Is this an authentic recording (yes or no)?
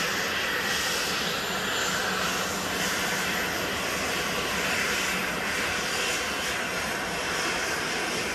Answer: yes